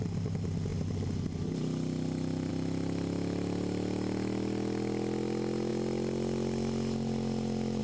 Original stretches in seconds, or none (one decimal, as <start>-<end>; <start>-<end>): 0.0-7.8